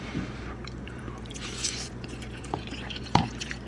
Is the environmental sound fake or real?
fake